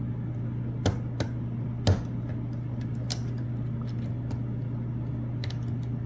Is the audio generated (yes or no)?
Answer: no